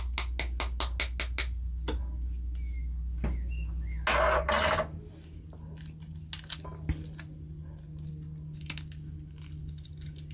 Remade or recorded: recorded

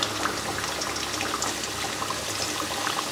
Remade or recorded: recorded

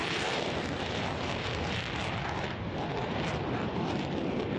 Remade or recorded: remade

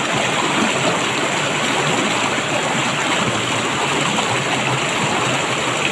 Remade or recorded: recorded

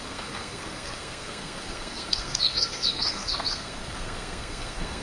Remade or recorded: remade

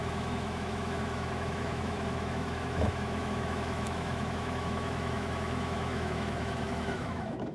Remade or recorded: remade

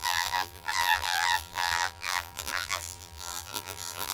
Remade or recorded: remade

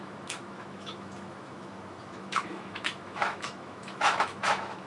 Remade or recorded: remade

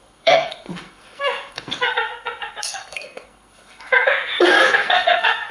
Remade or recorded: remade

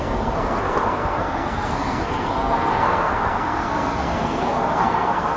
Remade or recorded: remade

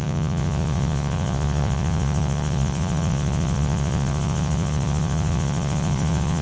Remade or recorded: remade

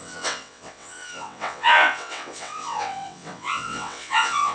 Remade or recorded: remade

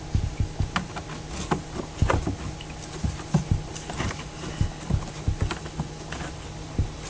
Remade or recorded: recorded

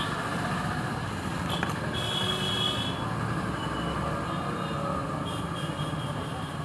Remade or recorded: recorded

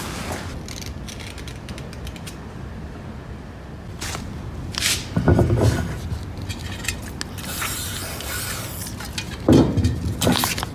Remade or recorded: recorded